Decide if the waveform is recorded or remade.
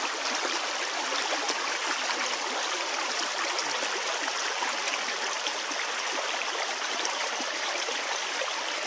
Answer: recorded